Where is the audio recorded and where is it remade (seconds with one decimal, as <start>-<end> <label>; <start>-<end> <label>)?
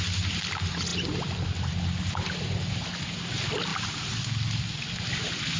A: 0.0-5.6 recorded